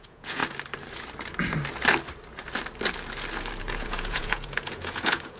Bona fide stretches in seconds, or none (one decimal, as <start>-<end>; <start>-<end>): 0.4-3.6